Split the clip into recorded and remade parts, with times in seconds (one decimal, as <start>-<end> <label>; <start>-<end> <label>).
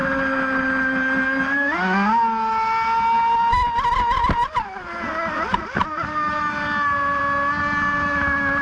0.0-5.8 recorded; 5.8-7.2 remade; 7.2-8.6 recorded